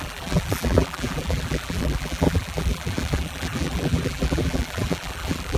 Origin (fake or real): fake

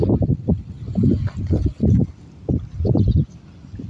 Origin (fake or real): real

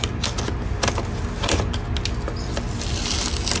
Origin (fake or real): real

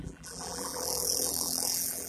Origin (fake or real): fake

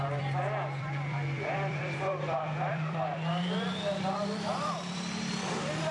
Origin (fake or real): fake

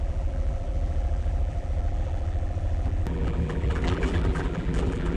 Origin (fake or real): fake